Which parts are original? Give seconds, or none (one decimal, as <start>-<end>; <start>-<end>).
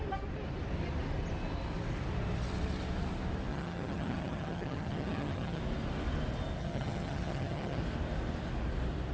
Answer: 0.0-3.5; 5.6-6.6; 7.8-9.1